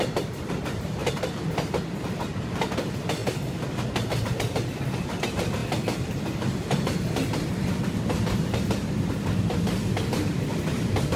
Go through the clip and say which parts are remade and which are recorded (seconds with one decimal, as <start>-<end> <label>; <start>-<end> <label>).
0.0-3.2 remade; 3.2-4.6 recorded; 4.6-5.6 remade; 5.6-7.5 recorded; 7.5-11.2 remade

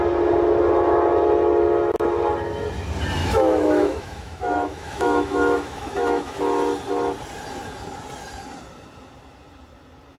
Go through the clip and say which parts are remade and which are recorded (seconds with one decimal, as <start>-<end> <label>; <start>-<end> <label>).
0.0-3.2 recorded; 3.2-6.4 remade; 6.4-10.2 recorded

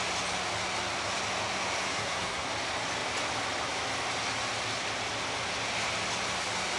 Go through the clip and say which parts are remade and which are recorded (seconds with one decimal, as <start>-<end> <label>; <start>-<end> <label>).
0.0-1.9 recorded; 1.9-2.5 remade; 2.5-6.8 recorded